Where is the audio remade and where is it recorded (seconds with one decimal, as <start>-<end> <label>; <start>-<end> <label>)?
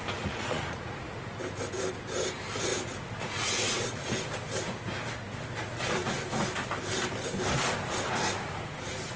0.0-1.4 remade; 1.4-2.7 recorded; 2.7-4.1 remade; 4.1-9.2 recorded